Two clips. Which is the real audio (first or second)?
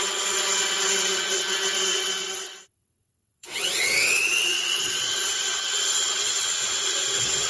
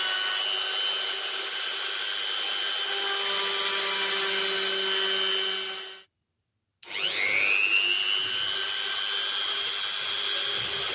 second